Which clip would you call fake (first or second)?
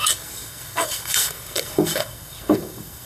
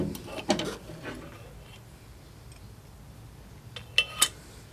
first